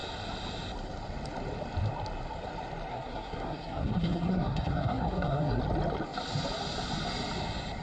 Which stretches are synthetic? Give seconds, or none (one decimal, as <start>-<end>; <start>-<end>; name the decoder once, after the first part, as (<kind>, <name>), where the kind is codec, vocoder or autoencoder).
2.9-5.6 (codec, SNAC)